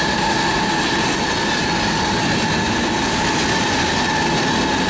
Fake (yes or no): no